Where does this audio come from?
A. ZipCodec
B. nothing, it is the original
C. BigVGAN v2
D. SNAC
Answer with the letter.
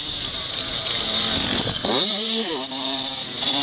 C